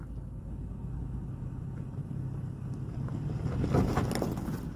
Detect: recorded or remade recorded